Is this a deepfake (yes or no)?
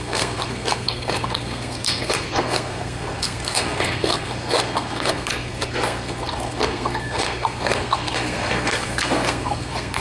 yes